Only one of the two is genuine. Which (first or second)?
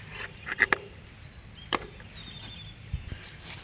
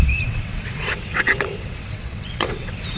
first